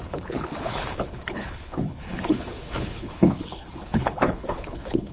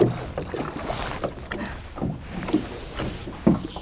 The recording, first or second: second